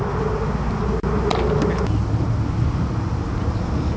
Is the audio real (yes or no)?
yes